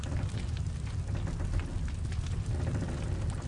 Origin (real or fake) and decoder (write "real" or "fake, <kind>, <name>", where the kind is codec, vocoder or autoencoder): real